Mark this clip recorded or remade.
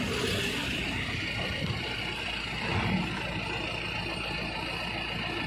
recorded